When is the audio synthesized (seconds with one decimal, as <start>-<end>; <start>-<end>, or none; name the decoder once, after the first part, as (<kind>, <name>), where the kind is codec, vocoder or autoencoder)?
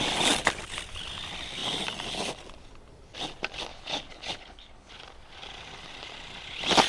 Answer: 3.7-4.9 (codec, HILCodec)